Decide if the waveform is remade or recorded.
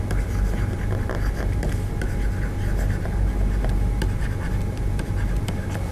recorded